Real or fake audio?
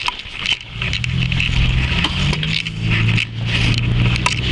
real